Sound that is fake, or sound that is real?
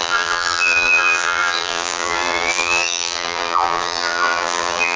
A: fake